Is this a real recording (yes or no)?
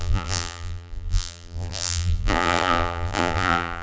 no